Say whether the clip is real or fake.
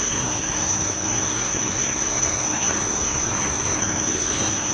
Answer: fake